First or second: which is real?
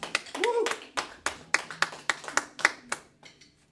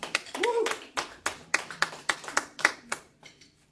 first